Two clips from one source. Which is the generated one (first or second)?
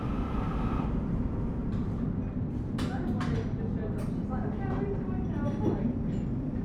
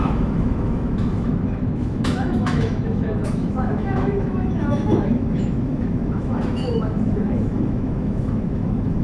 second